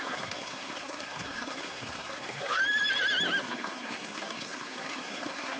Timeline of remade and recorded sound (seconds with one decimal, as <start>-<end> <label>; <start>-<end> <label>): 0.0-2.6 remade; 2.6-3.4 recorded; 3.4-5.6 remade